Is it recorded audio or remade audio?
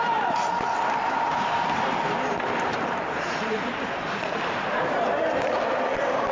remade